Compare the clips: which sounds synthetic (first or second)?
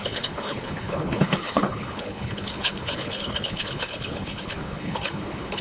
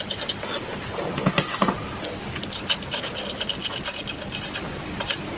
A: first